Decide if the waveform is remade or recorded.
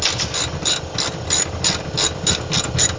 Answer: recorded